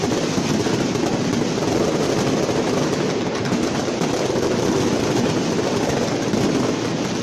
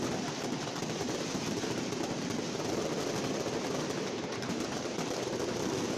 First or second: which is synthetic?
second